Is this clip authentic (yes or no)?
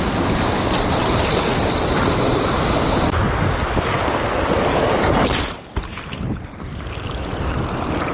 yes